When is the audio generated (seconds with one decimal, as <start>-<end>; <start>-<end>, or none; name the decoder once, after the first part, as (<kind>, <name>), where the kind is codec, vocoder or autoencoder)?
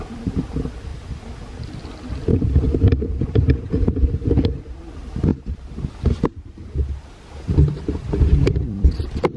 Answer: 0.0-0.9 (vocoder, BigVGAN v2); 3.0-5.3; 8.2-9.4